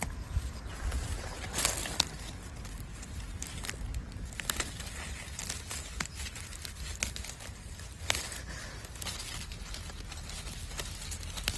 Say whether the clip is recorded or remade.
recorded